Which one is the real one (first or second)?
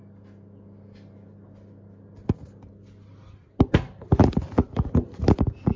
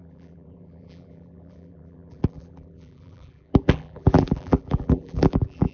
first